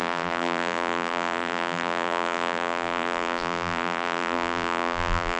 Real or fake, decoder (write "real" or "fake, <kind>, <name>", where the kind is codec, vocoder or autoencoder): fake, vocoder, BigVGAN v2